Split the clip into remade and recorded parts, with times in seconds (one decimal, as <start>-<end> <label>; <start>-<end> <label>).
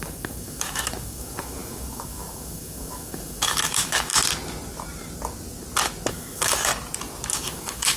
0.0-4.1 remade; 4.1-6.1 recorded; 6.1-6.7 remade; 6.7-7.3 recorded; 7.3-8.0 remade